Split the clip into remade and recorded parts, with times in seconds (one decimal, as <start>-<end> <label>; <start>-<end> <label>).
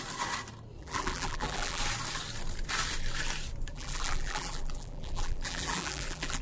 0.0-0.8 recorded; 0.8-1.8 remade; 1.8-3.7 recorded; 3.7-6.4 remade